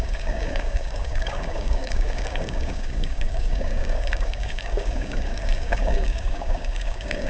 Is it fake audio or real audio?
fake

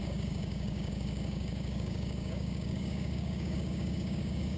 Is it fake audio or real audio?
fake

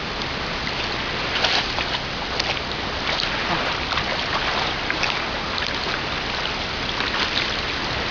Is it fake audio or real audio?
real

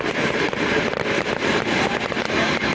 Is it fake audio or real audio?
fake